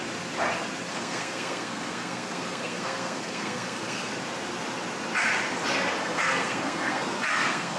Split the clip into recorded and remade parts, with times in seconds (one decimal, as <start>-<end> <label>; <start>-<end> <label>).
0.0-0.9 recorded; 0.9-4.1 remade; 4.1-6.0 recorded; 6.0-7.8 remade